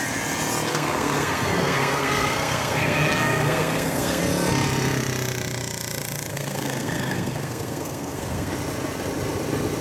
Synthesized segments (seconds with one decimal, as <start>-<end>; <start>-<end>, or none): 0.7-4.2; 6.3-8.5